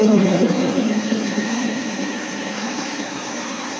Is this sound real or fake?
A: fake